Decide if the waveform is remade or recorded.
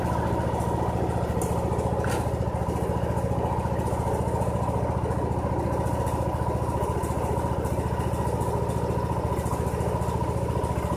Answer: recorded